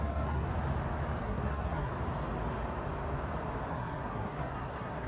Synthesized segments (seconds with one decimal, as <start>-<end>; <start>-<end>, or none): 0.0-0.5; 1.2-1.9; 3.7-5.1